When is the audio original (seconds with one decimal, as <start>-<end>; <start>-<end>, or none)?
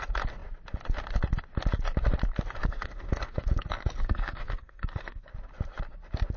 0.0-2.6; 5.3-6.4